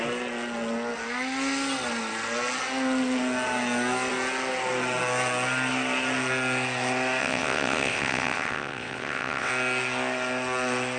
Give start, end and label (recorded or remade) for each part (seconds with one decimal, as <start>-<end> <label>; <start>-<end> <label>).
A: 0.0-7.2 recorded; 7.2-9.5 remade; 9.5-11.0 recorded

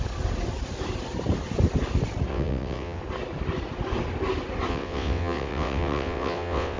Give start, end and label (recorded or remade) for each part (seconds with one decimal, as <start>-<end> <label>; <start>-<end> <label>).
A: 0.0-2.3 recorded; 2.3-3.0 remade; 3.0-4.7 recorded; 4.7-6.8 remade